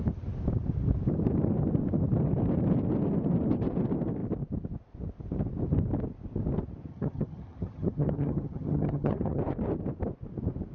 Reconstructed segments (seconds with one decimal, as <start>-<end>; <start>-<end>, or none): 6.9-9.4